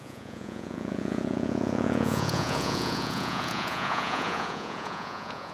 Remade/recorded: remade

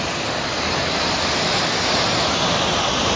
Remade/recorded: recorded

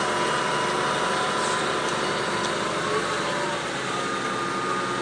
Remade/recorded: recorded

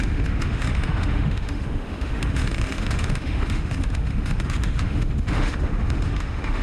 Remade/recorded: remade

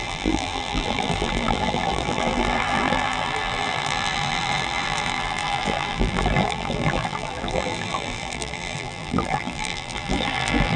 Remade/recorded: remade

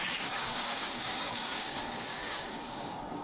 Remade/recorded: remade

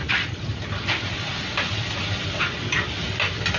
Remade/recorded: recorded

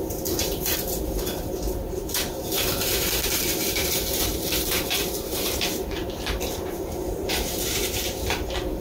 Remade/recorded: remade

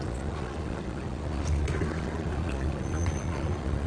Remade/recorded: remade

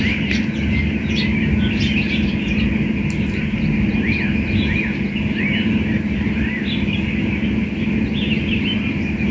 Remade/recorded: recorded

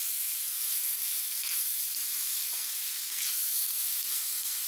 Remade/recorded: remade